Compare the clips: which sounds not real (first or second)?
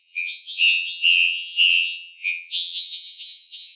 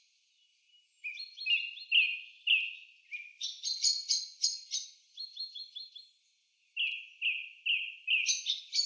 first